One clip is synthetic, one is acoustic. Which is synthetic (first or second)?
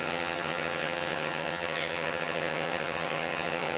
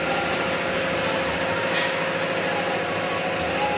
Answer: first